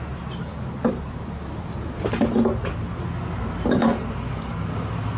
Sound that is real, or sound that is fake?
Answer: fake